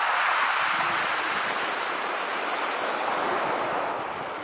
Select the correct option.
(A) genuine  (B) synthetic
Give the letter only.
A